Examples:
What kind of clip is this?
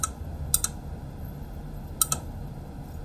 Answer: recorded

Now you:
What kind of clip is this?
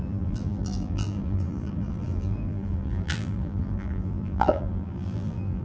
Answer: remade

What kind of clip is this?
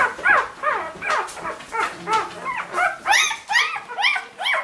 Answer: recorded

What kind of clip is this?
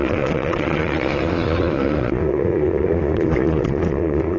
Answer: remade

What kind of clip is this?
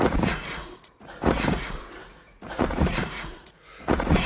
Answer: remade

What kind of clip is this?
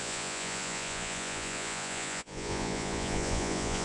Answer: remade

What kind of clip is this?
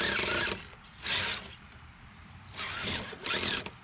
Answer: recorded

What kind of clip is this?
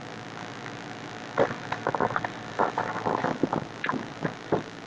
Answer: recorded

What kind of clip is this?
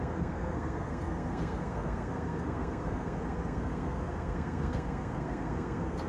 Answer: remade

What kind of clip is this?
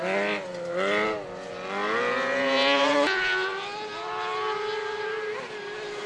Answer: recorded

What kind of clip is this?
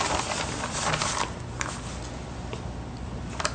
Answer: recorded